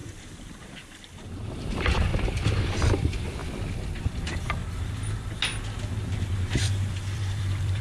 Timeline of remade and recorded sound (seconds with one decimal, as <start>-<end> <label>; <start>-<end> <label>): 0.0-3.4 remade; 3.4-4.0 recorded; 4.0-4.6 remade; 4.6-6.6 recorded; 6.6-7.8 remade